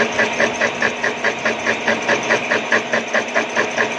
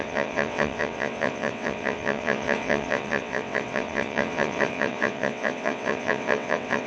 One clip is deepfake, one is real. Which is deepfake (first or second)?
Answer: second